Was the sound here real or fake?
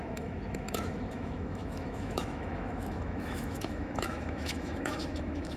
fake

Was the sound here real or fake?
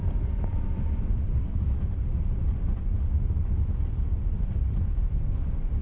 fake